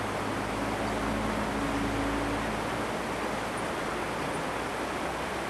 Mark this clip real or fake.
real